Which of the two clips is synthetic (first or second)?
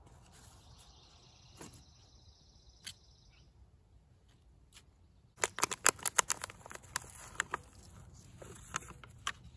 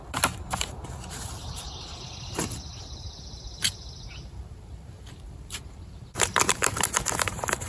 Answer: second